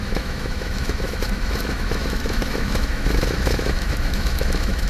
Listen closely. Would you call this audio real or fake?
fake